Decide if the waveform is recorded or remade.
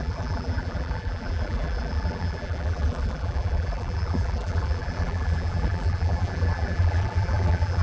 remade